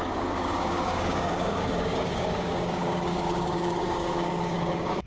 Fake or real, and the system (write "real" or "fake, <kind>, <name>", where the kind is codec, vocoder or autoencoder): fake, codec, DAC